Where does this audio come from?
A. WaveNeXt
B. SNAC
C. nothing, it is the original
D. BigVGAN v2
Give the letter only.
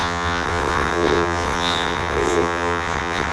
A